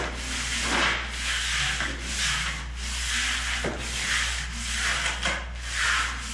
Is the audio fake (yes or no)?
no